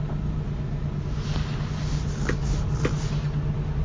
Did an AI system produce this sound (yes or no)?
no